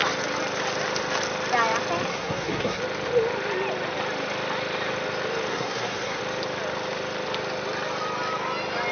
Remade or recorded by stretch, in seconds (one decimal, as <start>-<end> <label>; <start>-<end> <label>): 0.0-2.1 recorded; 2.1-2.8 remade; 2.8-5.5 recorded; 5.5-6.2 remade; 6.2-8.9 recorded

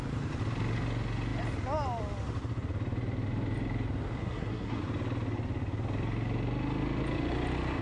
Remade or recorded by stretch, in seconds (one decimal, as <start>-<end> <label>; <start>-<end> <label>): 0.0-4.2 recorded; 4.2-4.8 remade; 4.8-7.8 recorded

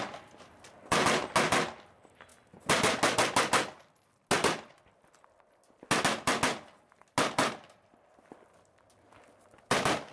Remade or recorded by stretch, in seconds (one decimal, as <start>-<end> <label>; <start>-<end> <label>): 0.0-10.1 recorded

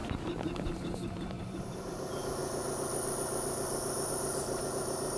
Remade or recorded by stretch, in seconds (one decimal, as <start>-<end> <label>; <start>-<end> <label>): 0.0-2.4 remade; 2.4-4.1 recorded; 4.1-5.2 remade

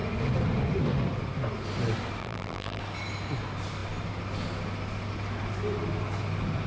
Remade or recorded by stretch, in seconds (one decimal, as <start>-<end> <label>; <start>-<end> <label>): 0.0-2.2 recorded; 2.2-2.8 remade; 2.8-6.7 recorded

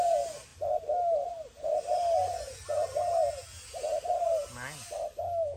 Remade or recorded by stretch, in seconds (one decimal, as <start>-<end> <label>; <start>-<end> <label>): 0.0-5.6 recorded